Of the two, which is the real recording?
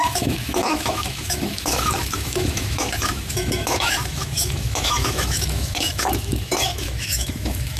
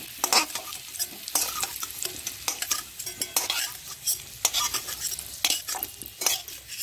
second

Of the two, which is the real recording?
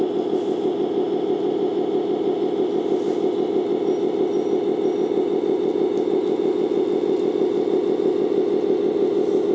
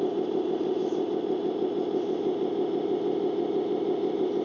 first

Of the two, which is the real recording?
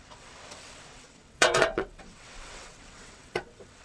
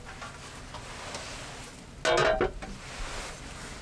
second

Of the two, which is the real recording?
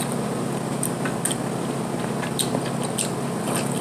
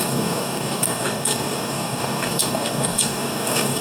first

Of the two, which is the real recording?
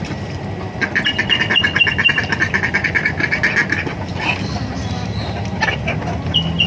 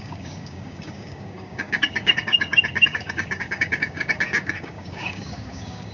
first